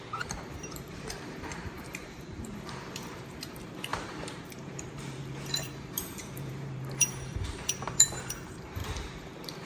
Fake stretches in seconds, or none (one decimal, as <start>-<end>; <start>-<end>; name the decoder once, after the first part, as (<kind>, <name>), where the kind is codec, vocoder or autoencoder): 0.0-9.7 (vocoder, BigVGAN v2)